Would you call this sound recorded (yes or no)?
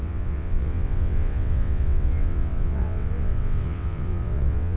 no